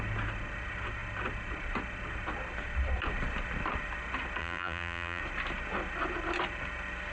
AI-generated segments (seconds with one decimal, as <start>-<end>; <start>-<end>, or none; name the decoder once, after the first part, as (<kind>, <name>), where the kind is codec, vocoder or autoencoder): 4.4-5.2 (vocoder, BigVGAN v2)